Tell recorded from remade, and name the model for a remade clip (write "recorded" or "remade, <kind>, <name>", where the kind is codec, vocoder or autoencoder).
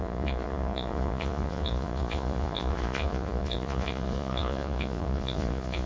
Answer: remade, vocoder, Vocos